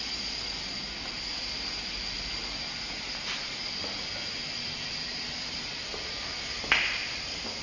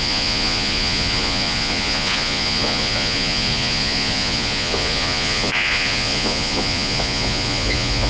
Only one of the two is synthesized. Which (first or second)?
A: second